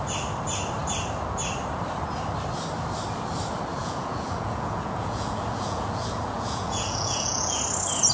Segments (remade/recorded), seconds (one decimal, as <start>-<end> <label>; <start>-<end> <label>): 0.0-3.8 recorded; 3.8-7.6 remade; 7.6-8.1 recorded

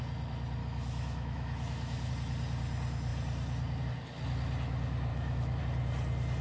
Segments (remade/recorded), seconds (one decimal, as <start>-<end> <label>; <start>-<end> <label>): 0.0-0.6 recorded; 0.6-2.1 remade; 2.1-5.1 recorded; 5.1-5.6 remade; 5.6-6.4 recorded